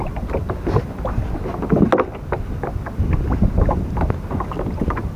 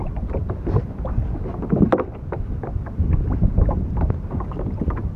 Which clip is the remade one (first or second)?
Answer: second